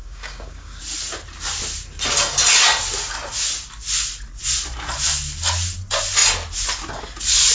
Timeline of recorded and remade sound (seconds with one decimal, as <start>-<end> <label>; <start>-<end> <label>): 0.0-0.8 remade; 0.8-7.5 recorded